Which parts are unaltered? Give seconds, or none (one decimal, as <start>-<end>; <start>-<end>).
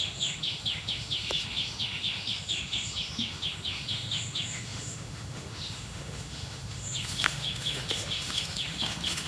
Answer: none